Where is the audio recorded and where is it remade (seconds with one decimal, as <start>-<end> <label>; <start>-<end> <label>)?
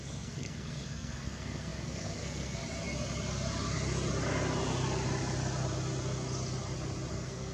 0.0-2.6 remade; 2.6-7.1 recorded; 7.1-7.5 remade